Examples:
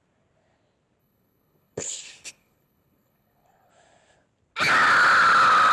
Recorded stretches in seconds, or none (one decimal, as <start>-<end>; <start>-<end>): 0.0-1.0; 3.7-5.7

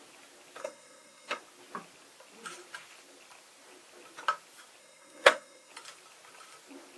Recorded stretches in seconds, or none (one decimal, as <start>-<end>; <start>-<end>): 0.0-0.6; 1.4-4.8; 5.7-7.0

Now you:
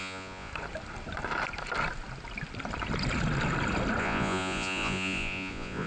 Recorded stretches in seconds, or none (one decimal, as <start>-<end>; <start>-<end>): 0.5-4.0